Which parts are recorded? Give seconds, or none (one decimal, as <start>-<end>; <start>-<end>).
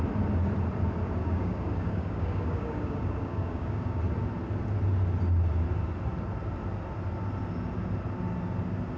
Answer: 0.0-1.2; 4.0-9.0